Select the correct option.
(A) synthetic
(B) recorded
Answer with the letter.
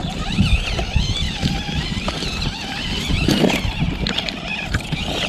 A